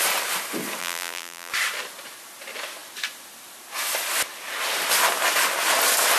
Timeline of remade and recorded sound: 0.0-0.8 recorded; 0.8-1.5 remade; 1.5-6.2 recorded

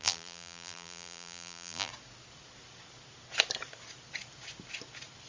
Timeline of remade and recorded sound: 0.0-1.9 remade; 1.9-5.3 recorded